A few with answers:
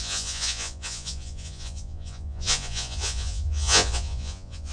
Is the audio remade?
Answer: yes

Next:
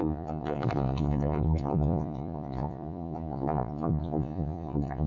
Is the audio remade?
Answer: yes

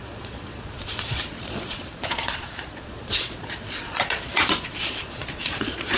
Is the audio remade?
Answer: yes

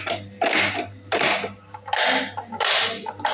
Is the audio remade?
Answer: no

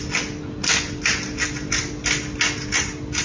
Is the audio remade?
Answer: no